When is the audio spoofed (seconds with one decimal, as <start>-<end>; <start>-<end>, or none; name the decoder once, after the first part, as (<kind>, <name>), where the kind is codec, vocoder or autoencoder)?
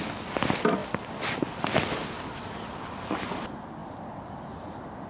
none